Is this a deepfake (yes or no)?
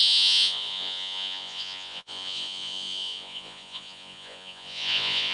yes